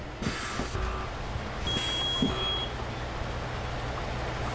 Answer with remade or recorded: recorded